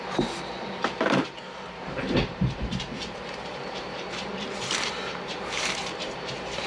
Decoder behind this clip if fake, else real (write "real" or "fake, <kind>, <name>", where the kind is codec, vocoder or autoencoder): fake, vocoder, BigVGAN v2